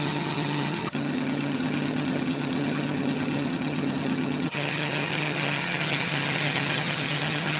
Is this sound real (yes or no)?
no